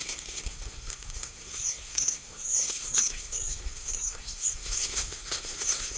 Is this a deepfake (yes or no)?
yes